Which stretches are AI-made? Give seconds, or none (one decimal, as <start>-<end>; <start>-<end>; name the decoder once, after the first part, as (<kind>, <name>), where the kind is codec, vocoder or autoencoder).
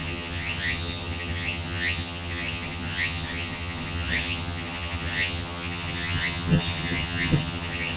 0.0-8.0 (vocoder, HiFi-GAN)